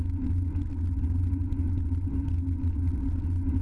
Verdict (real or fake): real